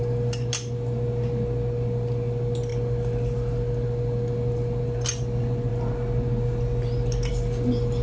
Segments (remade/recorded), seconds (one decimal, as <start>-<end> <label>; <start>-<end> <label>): 0.0-8.0 recorded